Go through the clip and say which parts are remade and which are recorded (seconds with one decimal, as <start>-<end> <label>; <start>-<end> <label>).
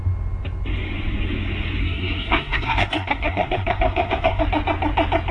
0.0-1.8 recorded; 1.8-4.4 remade; 4.4-5.3 recorded